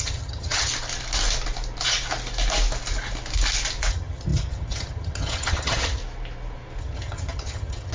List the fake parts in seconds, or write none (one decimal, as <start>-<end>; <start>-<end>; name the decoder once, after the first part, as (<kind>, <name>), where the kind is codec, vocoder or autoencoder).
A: 0.0-0.7 (vocoder, HiFi-GAN); 3.9-6.0; 6.8-7.9